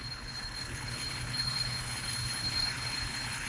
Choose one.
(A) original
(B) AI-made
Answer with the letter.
B